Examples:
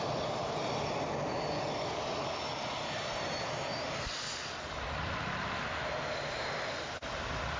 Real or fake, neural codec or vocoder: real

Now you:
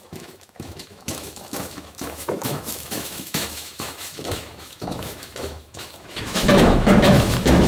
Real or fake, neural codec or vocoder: fake, autoencoder, DAC-VAE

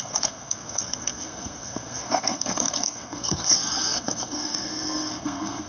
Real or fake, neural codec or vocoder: fake, codec, SNAC